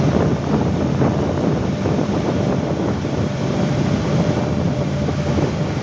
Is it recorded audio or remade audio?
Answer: remade